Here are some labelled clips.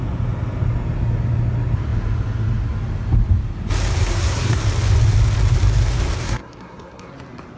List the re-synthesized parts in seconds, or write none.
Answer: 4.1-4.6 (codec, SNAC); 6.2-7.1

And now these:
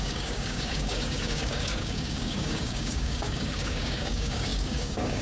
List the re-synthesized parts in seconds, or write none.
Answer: 0.0-5.2 (codec, DAC)

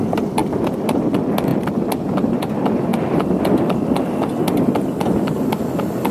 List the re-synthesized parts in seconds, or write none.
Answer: 0.4-1.0 (vocoder, BigVGAN v2); 2.9-6.1

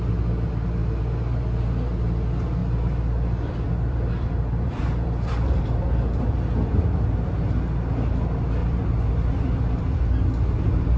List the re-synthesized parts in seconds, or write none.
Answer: 2.6-7.0 (vocoder, BigVGAN v2); 8.6-9.8

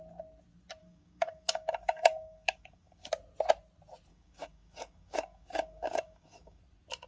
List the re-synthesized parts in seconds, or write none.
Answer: 0.8-3.1 (codec, DAC); 4.1-6.6

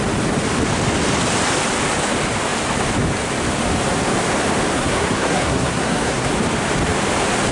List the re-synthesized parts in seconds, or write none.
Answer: 4.7-6.3 (codec, SNAC)

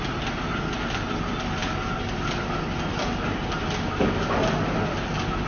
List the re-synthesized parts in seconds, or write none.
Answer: none

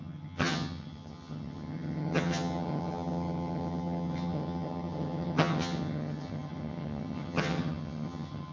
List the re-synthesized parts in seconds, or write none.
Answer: 0.0-8.5 (vocoder, HiFi-GAN)